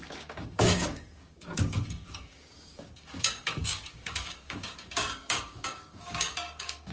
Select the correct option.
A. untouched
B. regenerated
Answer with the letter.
B